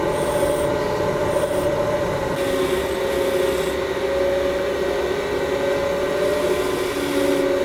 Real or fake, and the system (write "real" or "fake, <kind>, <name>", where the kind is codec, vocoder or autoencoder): real